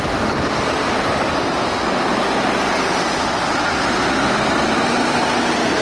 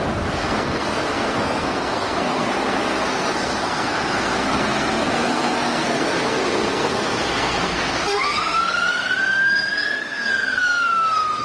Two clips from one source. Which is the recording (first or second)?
first